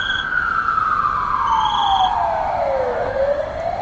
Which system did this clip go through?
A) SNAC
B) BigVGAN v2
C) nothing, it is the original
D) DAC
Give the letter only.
C